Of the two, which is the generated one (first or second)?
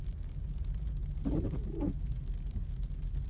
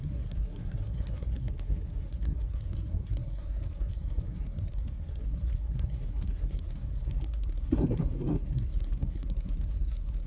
second